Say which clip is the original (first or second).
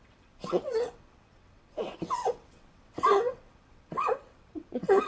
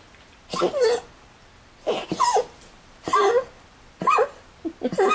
second